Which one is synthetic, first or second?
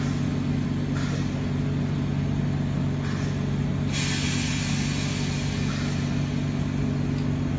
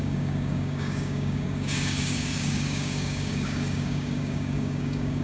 second